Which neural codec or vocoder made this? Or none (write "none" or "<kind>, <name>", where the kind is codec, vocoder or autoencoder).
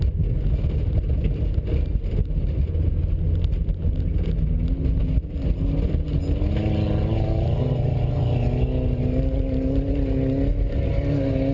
none